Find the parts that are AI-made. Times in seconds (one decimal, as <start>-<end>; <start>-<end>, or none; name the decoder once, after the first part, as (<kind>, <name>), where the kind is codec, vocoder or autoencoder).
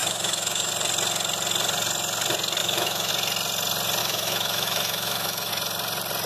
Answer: 0.0-0.7 (autoencoder, DAC-VAE); 2.6-3.1; 4.0-5.5